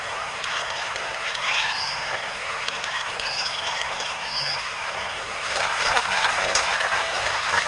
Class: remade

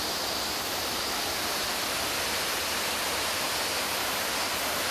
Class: recorded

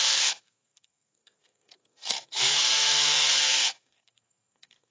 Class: remade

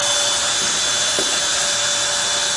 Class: recorded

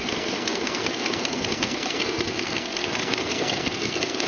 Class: remade